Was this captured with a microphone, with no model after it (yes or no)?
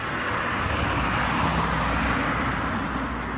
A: yes